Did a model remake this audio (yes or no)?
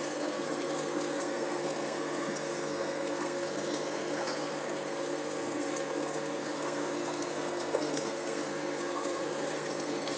yes